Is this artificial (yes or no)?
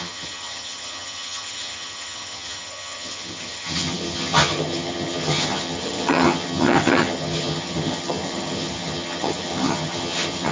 yes